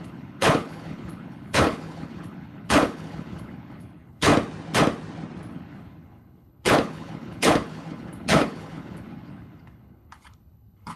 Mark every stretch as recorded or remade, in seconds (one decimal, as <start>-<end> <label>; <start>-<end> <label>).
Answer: 0.0-4.3 remade; 4.3-5.5 recorded; 5.5-11.0 remade